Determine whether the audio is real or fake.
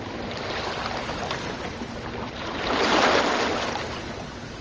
real